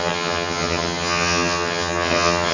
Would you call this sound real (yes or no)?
no